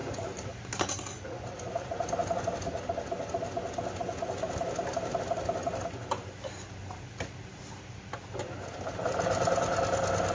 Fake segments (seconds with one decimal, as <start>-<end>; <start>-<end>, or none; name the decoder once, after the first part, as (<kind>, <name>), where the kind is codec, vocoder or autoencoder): 0.0-0.9 (vocoder, BigVGAN v2); 4.4-5.2